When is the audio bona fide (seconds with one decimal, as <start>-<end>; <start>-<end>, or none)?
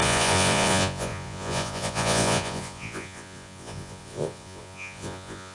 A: none